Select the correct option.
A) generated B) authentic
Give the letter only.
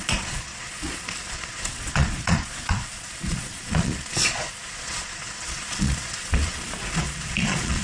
A